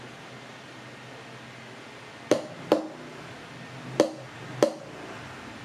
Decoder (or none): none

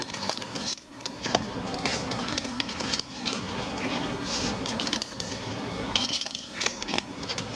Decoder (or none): codec, SNAC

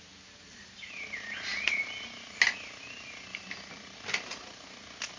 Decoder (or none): none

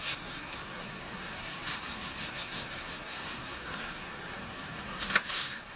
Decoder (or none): codec, SNAC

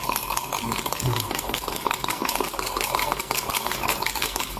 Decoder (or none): codec, SNAC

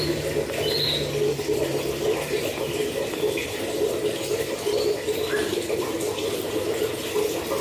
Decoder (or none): none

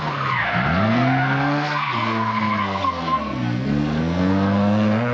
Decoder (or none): codec, SNAC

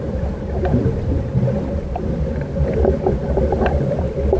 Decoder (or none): none